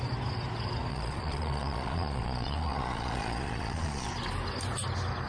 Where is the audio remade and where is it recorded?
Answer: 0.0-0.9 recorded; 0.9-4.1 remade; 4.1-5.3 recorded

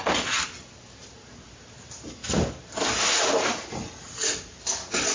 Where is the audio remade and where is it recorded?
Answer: 0.0-5.1 recorded

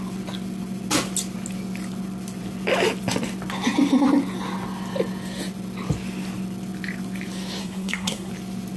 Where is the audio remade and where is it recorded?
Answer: 0.0-7.6 recorded; 7.6-8.3 remade; 8.3-8.8 recorded

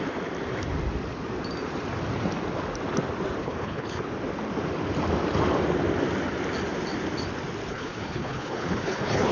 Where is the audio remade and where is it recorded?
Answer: 0.0-3.4 recorded; 3.4-4.0 remade; 4.0-7.7 recorded; 7.7-9.3 remade

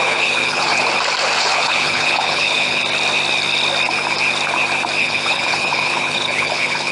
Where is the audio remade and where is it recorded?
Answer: 0.0-0.7 remade; 0.7-1.4 recorded; 1.4-2.8 remade; 2.8-5.0 recorded; 5.0-6.9 remade